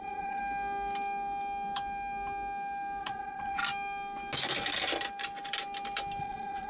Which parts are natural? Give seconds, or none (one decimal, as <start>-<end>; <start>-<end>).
0.4-3.0; 3.6-6.2